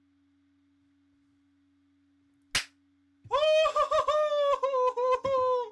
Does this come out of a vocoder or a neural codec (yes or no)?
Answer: no